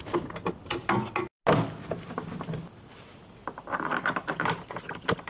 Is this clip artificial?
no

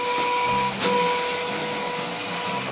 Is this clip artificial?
no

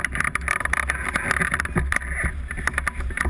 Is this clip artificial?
no